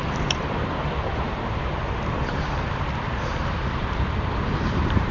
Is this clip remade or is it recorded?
remade